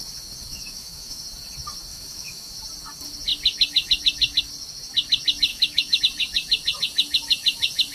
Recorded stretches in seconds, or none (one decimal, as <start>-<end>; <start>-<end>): 0.0-0.5; 1.2-1.9; 2.5-5.5; 6.0-7.9